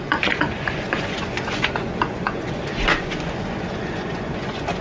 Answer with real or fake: fake